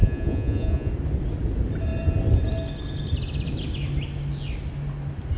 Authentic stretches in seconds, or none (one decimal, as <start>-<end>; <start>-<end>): 0.9-5.4